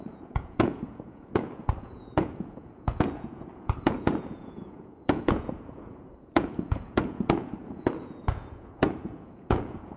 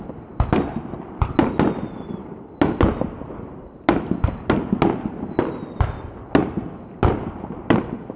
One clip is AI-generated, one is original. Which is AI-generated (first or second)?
first